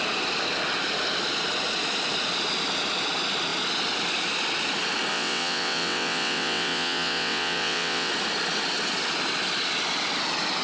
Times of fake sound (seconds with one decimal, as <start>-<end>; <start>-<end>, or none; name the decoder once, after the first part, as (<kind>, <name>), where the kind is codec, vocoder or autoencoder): 5.1-8.1 (vocoder, WaveNeXt)